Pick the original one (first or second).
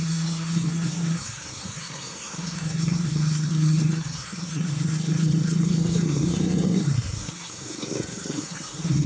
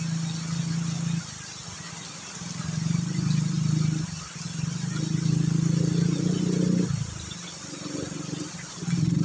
second